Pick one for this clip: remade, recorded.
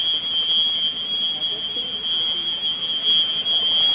recorded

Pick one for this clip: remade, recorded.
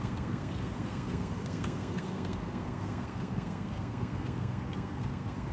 remade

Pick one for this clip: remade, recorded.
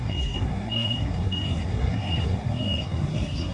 remade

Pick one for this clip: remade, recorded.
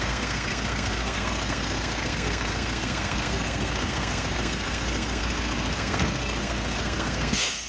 remade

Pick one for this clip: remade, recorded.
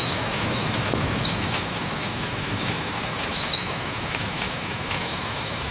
remade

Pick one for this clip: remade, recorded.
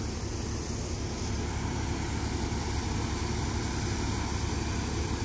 recorded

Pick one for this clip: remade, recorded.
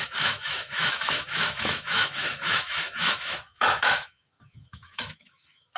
remade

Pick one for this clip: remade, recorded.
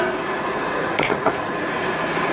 remade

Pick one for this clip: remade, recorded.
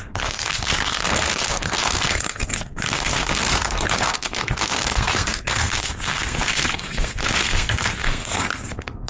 remade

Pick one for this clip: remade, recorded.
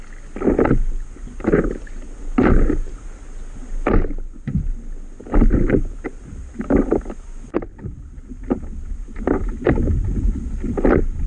recorded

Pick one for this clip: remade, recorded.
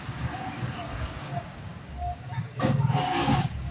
remade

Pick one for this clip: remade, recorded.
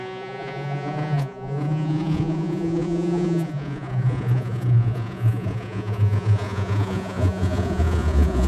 remade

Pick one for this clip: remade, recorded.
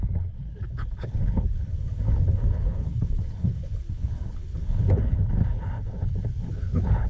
remade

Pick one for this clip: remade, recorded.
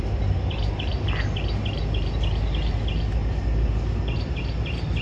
recorded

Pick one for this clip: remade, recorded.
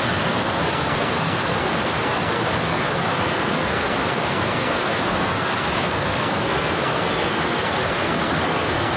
remade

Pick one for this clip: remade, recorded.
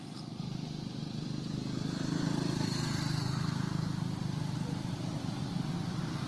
recorded